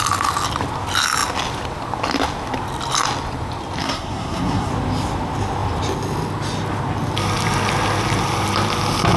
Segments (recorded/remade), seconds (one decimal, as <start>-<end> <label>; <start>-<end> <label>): 0.0-3.8 recorded; 3.8-4.7 remade; 4.7-9.2 recorded